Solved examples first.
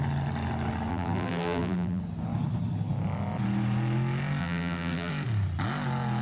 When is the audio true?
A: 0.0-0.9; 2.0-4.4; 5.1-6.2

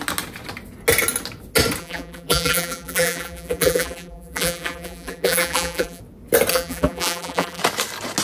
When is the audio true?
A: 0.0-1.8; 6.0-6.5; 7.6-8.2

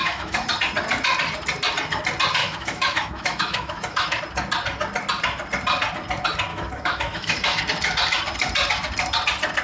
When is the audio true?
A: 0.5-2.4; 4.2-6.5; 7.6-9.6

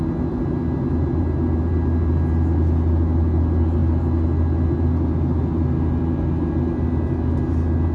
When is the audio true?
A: 0.0-7.9

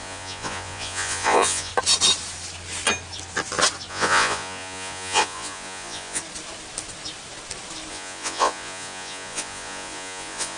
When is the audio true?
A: 1.7-3.9; 6.2-7.9